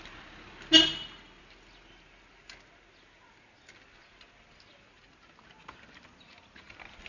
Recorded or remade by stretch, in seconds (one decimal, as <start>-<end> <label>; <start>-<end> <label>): 0.0-7.1 recorded